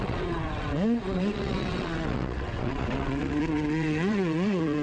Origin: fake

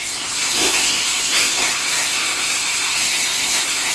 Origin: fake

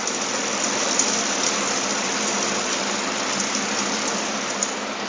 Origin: real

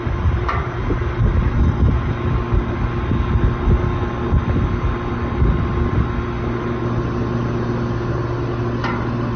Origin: real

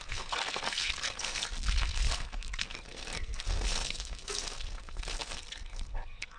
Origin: fake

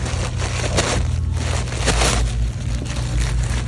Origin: real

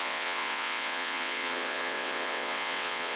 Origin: fake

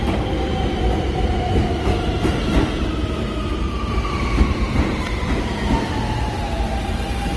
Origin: fake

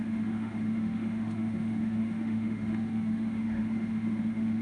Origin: fake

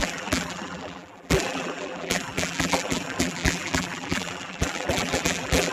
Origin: fake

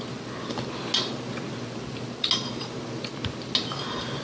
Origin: real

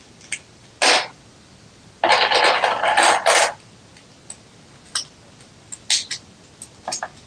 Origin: real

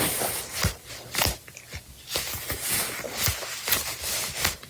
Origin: real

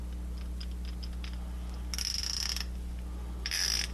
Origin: real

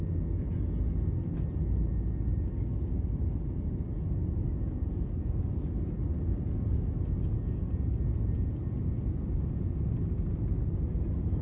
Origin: real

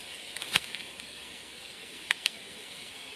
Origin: fake